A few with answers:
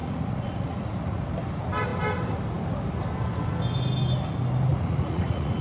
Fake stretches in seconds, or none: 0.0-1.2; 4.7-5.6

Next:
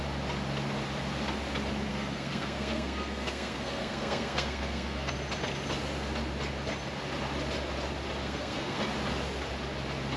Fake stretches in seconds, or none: 1.9-5.1; 8.2-8.8

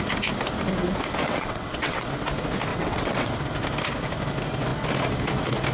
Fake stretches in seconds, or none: 1.2-2.1; 2.7-3.3

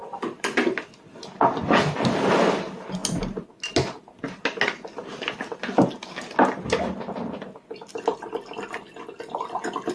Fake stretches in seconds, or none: 0.0-0.5; 3.0-3.5; 5.0-6.8

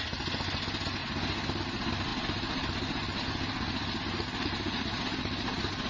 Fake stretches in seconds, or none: none